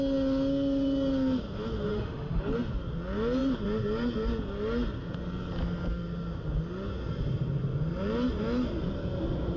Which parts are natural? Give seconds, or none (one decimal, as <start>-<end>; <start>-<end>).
0.0-1.9; 2.4-9.6